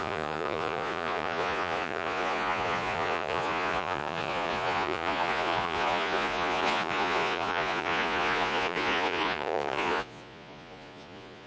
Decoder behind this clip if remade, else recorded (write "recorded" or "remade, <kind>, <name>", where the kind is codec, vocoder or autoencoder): remade, vocoder, Vocos